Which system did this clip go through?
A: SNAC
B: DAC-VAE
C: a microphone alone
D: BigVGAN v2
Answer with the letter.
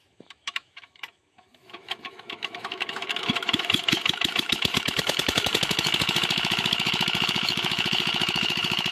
B